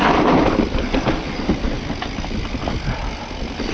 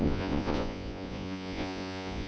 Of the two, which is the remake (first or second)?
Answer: second